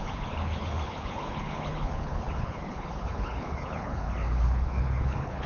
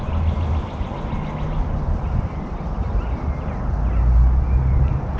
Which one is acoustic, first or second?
second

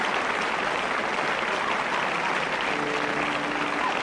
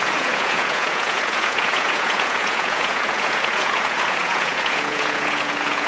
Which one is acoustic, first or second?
first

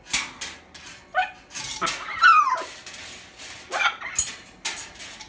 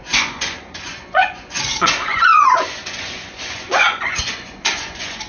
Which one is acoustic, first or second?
first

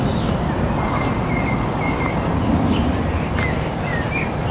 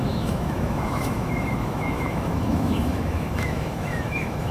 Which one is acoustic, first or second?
first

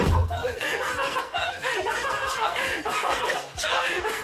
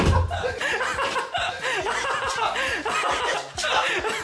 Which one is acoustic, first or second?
second